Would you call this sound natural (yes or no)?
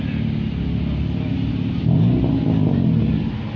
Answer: yes